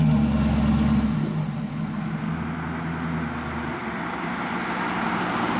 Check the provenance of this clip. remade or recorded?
recorded